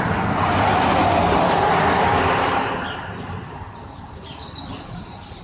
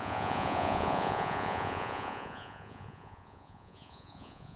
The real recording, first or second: first